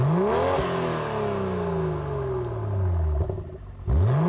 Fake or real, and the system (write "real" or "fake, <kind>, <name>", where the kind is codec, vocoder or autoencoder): real